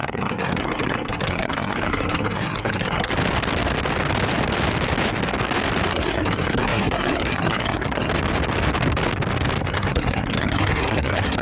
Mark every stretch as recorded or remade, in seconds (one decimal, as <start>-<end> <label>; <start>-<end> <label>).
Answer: 0.0-3.1 remade; 3.1-5.9 recorded; 5.9-8.1 remade; 8.1-9.6 recorded; 9.6-11.4 remade